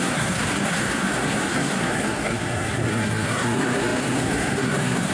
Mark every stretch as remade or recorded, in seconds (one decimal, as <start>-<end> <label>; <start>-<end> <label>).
0.0-5.1 remade